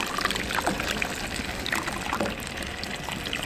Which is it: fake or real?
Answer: real